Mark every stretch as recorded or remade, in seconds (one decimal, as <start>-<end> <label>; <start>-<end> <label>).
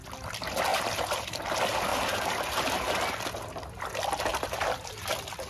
0.0-0.7 recorded; 0.7-1.4 remade; 1.4-1.9 recorded; 1.9-3.0 remade; 3.0-4.3 recorded; 4.3-5.1 remade; 5.1-5.5 recorded